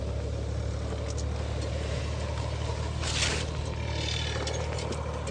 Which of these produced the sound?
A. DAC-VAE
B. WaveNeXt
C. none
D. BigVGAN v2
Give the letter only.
C